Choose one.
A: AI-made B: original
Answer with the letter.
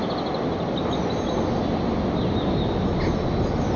B